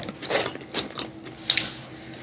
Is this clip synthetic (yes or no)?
no